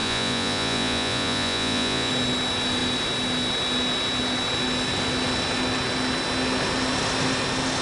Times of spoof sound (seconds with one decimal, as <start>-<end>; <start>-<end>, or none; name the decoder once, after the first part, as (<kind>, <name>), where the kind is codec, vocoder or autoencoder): 0.0-2.1 (vocoder, Vocos)